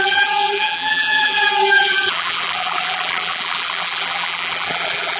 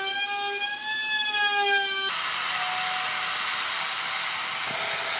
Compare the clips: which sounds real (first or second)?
second